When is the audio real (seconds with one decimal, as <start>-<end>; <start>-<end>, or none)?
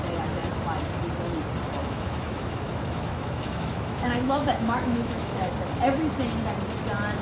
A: 0.0-1.8; 5.5-7.2